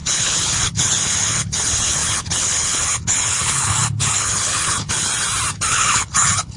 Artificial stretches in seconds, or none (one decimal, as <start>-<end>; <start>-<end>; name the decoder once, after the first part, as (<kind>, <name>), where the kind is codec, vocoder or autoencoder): 0.0-5.1 (codec, HILCodec); 5.7-6.6